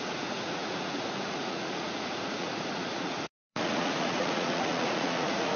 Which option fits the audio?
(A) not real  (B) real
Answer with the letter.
A